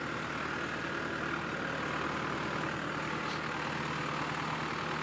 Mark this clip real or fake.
real